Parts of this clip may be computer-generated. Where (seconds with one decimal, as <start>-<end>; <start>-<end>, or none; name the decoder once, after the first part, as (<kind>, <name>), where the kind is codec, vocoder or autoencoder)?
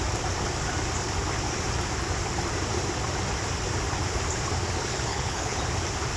5.1-5.6 (codec, HILCodec)